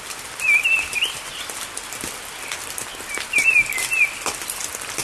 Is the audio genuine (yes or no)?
yes